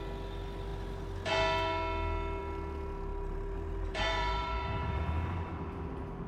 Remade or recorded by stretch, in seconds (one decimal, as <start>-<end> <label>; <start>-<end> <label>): 0.0-3.1 recorded; 3.1-5.0 remade; 5.0-6.3 recorded